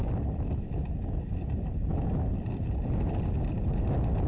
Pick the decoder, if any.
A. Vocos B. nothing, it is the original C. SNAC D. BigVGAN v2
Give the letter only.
B